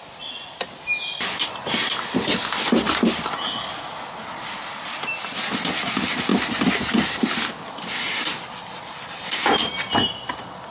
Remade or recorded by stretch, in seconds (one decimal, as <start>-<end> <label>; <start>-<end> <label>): 0.0-10.7 recorded